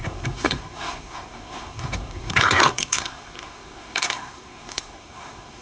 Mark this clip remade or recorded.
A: remade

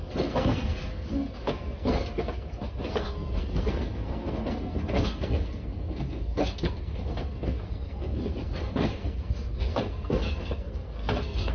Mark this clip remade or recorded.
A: remade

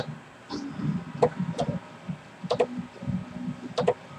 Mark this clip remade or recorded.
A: recorded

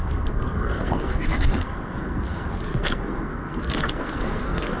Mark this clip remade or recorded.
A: remade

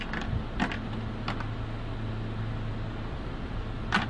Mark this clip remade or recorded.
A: recorded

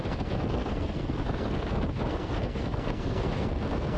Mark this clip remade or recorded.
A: remade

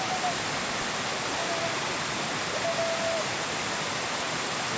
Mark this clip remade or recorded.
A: recorded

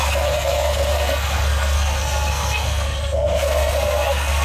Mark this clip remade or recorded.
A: remade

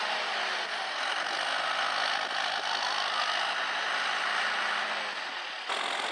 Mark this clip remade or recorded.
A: recorded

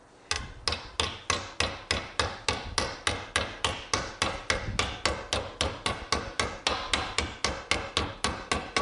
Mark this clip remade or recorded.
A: recorded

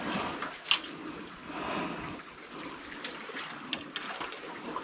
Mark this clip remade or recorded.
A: recorded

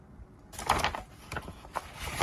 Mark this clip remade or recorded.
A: recorded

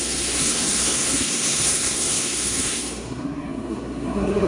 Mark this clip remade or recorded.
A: remade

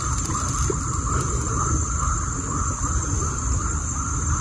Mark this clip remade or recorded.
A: recorded